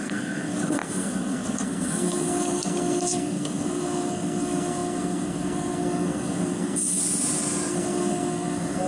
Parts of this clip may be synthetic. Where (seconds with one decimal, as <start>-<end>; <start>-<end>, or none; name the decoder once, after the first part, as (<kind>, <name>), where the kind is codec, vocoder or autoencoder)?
0.0-7.0 (codec, SNAC); 7.7-8.9